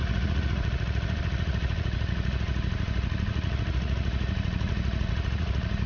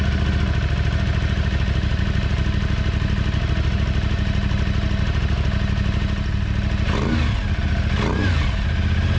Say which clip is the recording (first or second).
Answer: second